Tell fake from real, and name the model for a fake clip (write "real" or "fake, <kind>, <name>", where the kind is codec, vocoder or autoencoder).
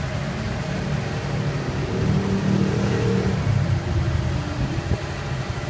real